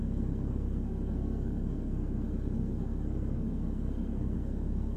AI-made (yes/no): yes